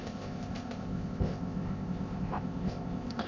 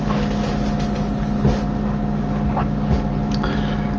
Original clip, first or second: second